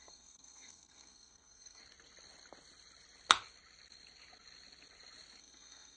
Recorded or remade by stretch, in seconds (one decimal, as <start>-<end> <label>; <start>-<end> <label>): 0.0-1.8 remade; 1.8-5.4 recorded; 5.4-6.0 remade